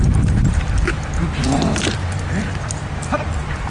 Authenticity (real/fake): fake